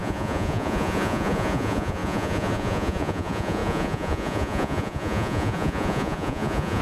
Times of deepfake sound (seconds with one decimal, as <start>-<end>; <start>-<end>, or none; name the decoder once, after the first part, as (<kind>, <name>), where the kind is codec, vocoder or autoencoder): 0.0-6.8 (vocoder, Vocos)